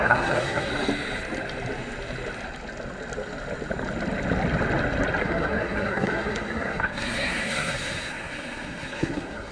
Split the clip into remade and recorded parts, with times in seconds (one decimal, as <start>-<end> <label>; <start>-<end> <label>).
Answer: 0.0-0.7 remade; 0.7-5.2 recorded; 5.2-9.5 remade